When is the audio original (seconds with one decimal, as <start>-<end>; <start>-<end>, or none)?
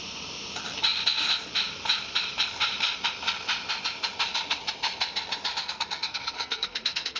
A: 0.0-5.6